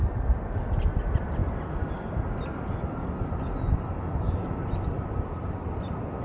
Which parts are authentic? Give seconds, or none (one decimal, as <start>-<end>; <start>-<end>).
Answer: 0.0-6.2